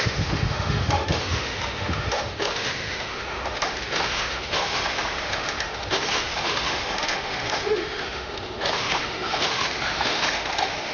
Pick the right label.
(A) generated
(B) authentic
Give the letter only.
A